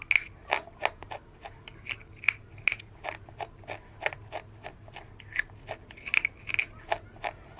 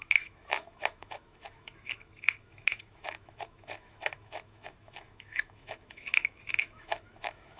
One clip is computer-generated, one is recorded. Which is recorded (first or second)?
first